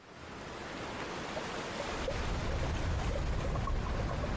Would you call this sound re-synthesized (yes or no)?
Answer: no